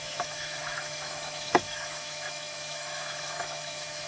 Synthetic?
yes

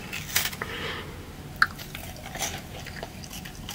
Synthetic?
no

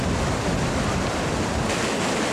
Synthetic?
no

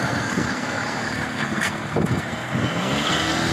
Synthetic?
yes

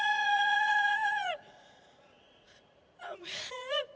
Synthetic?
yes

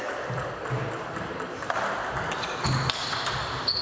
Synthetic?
no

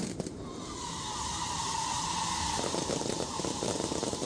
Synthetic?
yes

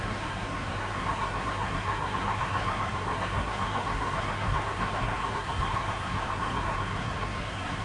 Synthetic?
yes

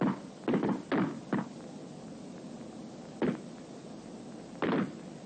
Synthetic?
no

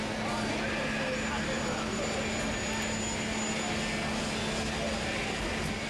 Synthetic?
no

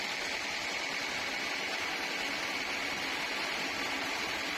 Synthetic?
no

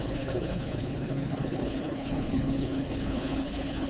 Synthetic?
yes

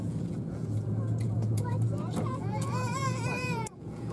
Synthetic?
yes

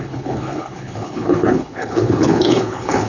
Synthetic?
yes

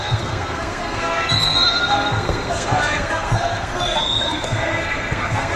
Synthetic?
yes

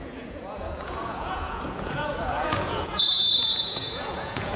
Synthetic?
yes